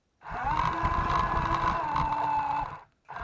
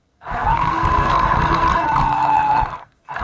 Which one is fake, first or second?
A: second